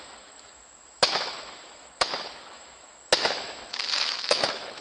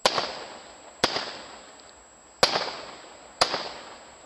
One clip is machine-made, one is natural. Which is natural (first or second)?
second